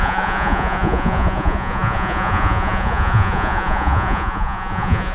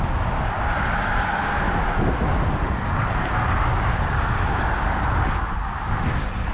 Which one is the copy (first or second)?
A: first